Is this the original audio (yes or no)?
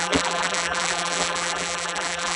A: no